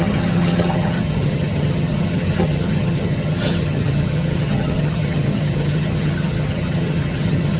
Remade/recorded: remade